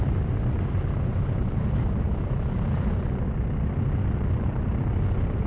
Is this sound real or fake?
real